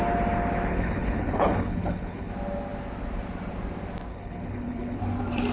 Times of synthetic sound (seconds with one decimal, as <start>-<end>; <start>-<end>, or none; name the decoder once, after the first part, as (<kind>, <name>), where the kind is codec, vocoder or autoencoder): 0.7-2.3 (codec, HILCodec); 4.1-5.0